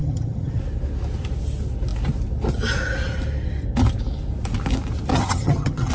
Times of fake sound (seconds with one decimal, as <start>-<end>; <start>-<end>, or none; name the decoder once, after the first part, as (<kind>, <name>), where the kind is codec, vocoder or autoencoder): 0.0-0.6 (vocoder, HiFi-GAN); 5.1-5.9